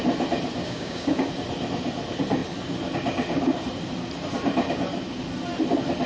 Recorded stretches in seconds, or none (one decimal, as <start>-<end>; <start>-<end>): 0.0-0.6; 1.2-6.1